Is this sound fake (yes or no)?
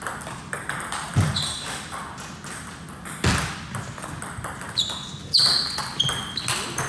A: no